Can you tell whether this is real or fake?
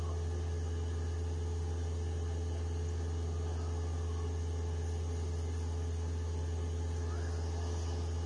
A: real